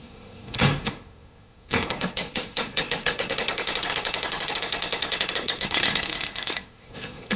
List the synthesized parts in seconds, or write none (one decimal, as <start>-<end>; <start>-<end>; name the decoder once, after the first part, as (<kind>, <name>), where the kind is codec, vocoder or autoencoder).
0.0-7.4 (codec, SNAC)